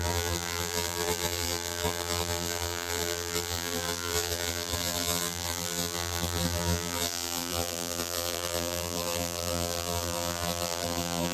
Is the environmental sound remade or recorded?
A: remade